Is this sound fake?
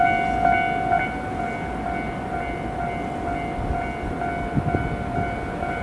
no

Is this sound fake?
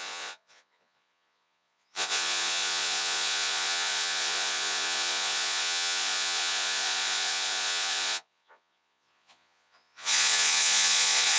yes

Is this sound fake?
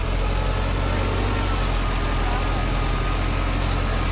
no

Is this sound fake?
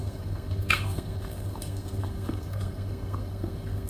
yes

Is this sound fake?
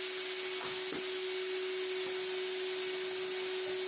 no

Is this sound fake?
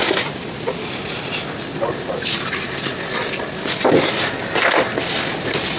no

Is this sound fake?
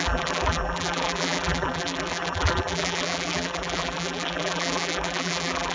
yes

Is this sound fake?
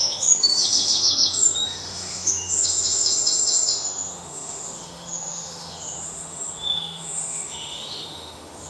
yes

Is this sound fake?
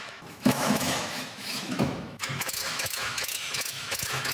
yes